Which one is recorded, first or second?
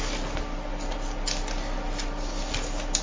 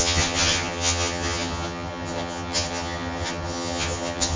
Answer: first